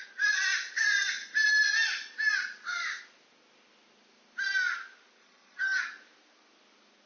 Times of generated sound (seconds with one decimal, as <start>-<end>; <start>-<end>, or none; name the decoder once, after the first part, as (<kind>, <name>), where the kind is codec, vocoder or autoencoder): 5.2-5.8 (vocoder, HiFi-GAN)